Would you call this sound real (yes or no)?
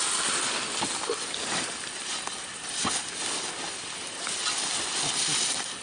yes